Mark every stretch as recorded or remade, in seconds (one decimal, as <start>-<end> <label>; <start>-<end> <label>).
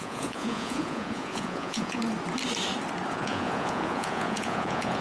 0.0-2.0 remade; 2.0-3.1 recorded; 3.1-5.0 remade